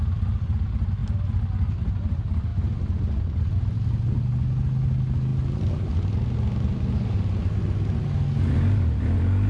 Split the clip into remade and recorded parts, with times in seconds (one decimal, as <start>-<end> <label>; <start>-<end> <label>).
0.0-9.5 recorded